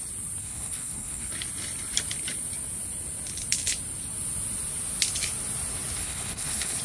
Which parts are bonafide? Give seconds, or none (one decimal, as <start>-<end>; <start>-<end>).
0.0-0.4; 1.3-6.0